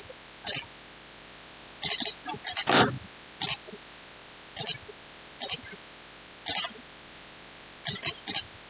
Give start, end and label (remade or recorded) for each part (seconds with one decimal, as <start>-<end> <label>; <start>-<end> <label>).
0.0-8.7 recorded

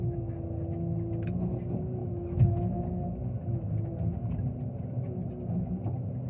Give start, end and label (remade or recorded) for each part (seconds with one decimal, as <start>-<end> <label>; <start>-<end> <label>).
0.0-2.0 recorded; 2.0-2.8 remade; 2.8-6.3 recorded

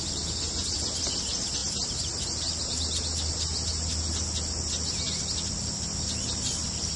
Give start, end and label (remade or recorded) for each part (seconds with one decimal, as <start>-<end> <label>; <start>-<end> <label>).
0.0-7.0 recorded

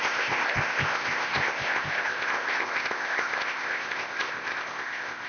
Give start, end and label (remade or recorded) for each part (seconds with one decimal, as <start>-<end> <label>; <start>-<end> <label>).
0.0-5.3 remade

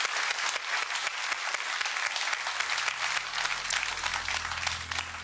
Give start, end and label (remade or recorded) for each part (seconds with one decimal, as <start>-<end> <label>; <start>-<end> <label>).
0.0-5.2 recorded

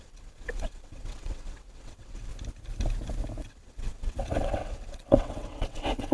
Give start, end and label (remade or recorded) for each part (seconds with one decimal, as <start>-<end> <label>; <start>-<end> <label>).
0.0-2.3 remade; 2.3-3.4 recorded; 3.4-6.1 remade

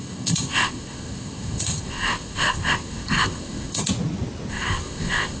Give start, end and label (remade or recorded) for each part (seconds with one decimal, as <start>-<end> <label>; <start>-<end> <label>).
0.0-3.8 remade; 3.8-4.5 recorded; 4.5-5.4 remade

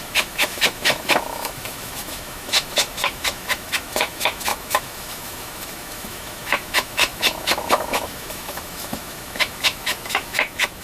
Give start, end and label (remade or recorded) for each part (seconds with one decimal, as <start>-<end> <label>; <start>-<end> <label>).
0.0-10.8 remade